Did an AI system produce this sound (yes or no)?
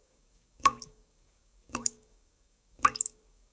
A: yes